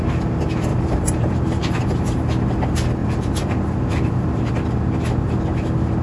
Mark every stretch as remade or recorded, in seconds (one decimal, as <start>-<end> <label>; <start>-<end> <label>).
0.0-0.7 recorded; 0.7-1.8 remade; 1.8-3.0 recorded; 3.0-4.5 remade; 4.5-6.0 recorded